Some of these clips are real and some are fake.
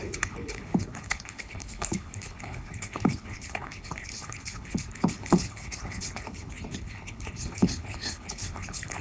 fake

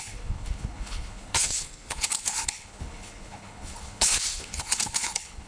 fake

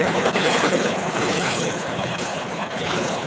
fake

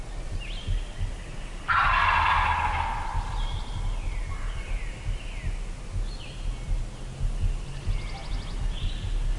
real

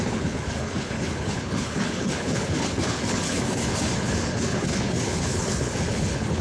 fake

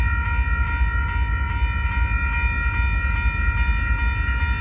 real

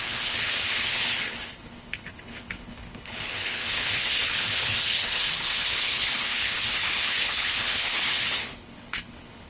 fake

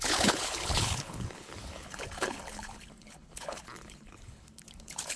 fake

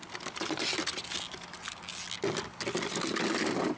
real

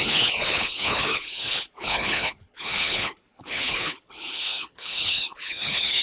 fake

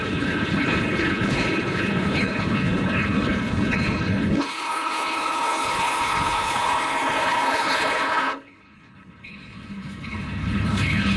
fake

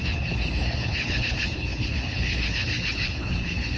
fake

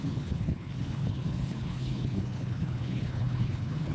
fake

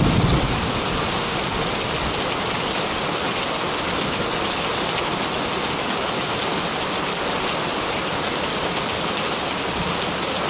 real